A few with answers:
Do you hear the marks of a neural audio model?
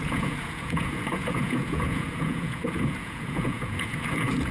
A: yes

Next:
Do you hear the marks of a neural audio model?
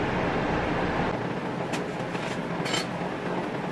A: no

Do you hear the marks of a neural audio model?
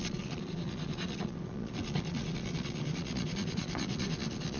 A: yes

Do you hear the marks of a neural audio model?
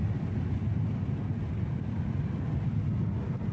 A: no